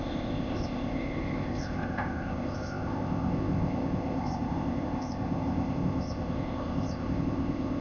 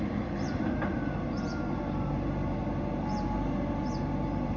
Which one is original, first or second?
second